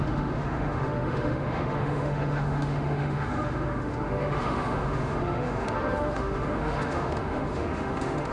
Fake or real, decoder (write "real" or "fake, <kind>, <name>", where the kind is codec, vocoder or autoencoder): fake, autoencoder, DAC-VAE